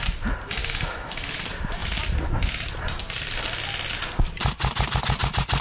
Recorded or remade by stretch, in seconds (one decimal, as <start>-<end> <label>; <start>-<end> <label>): 0.0-0.6 recorded; 0.6-1.4 remade; 1.4-5.6 recorded